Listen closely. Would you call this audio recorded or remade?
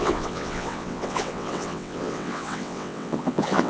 remade